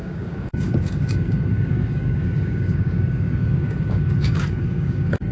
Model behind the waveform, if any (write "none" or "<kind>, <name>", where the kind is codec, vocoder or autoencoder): codec, DAC